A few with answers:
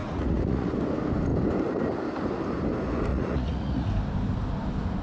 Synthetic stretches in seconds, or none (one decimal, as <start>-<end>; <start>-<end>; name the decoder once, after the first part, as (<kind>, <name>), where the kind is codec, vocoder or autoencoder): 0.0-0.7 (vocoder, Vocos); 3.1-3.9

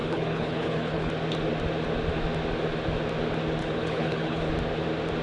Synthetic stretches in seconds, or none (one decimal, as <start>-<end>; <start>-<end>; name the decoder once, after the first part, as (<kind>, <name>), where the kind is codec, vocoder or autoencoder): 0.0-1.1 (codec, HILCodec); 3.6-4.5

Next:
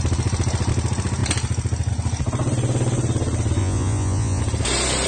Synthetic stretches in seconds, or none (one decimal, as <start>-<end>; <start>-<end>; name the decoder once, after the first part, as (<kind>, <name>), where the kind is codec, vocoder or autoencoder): 3.6-4.4 (vocoder, Vocos)

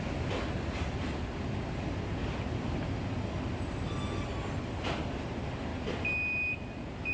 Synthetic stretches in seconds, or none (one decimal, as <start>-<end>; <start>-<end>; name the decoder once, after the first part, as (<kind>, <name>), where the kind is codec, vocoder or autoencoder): none

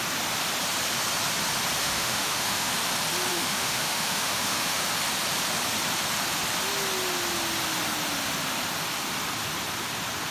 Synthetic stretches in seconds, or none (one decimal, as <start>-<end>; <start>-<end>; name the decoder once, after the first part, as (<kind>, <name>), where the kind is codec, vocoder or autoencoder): 1.8-2.7 (autoencoder, DAC-VAE); 3.3-4.8

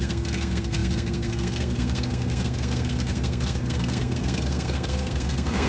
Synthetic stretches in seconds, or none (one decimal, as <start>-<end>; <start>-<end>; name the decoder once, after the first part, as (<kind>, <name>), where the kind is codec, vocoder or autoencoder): 0.0-5.7 (codec, SNAC)

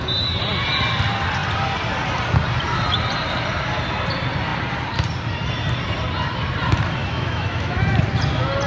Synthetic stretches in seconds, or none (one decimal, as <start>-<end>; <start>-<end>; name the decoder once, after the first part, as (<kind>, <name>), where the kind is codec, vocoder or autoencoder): 7.0-7.8 (autoencoder, DAC-VAE)

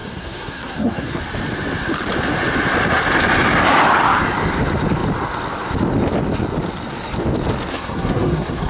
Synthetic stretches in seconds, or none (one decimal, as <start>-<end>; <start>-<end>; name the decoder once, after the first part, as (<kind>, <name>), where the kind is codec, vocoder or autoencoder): 0.0-1.2 (codec, SNAC); 7.7-8.7